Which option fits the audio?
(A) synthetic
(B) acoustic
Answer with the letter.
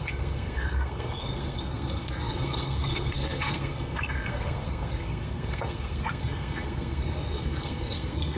A